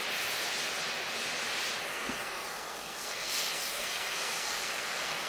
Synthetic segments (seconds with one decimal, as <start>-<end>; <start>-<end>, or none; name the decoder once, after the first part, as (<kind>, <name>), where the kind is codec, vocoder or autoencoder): 1.9-5.3 (codec, SNAC)